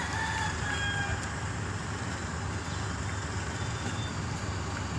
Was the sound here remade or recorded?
recorded